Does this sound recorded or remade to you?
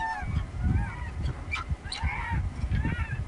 recorded